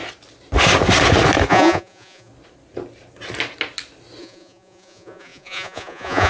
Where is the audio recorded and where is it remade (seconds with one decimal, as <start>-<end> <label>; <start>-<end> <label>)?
0.0-1.5 recorded; 1.5-2.3 remade; 2.3-4.2 recorded; 4.2-6.3 remade